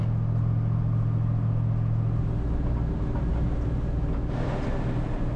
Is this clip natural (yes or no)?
yes